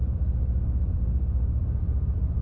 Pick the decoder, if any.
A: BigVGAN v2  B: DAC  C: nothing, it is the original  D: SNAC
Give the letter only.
A